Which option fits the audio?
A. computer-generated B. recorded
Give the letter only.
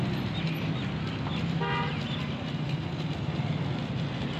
B